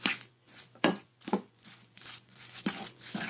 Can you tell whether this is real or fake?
fake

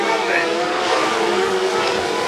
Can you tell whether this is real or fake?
fake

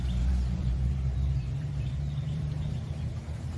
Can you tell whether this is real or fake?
fake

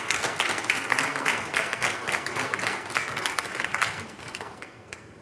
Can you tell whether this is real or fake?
fake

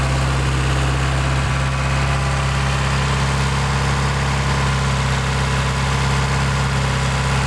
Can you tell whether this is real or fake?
real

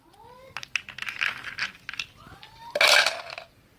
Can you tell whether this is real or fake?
real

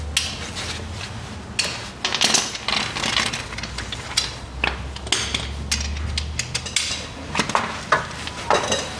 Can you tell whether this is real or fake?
real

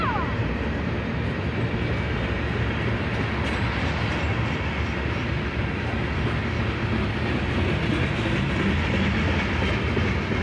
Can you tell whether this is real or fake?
real